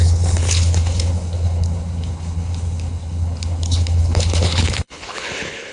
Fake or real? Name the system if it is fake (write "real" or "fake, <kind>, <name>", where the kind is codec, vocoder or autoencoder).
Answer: fake, codec, HILCodec